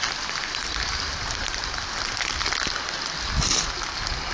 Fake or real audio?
real